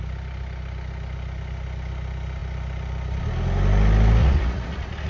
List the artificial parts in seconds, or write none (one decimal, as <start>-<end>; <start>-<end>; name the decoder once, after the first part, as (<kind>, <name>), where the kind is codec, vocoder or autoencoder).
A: 4.2-5.1 (vocoder, Vocos)